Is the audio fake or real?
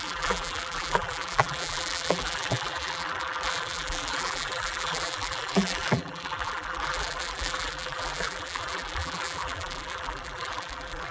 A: fake